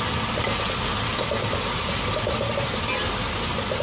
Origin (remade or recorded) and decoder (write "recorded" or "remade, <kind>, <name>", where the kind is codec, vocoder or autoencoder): recorded